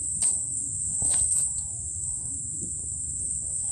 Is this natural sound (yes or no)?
no